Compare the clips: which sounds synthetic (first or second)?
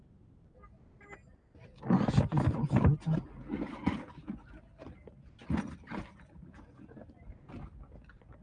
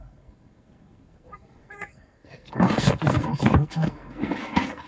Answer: second